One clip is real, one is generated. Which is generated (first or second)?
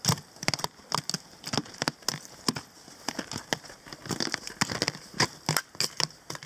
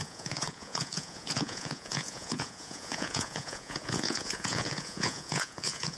second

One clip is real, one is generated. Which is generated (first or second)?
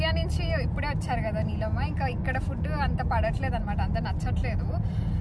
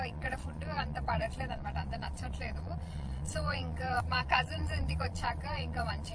second